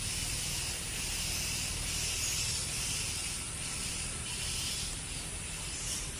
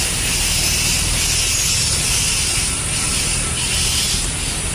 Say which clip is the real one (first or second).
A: second